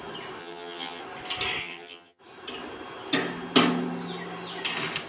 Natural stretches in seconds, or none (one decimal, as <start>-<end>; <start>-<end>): 0.0-0.4; 1.0-1.6; 2.2-5.1